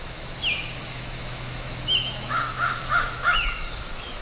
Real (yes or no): no